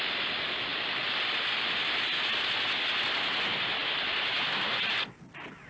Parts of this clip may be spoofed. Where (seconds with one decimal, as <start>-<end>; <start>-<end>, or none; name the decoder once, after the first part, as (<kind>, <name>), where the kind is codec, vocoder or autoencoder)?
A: none